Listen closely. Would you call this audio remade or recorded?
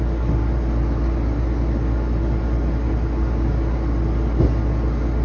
recorded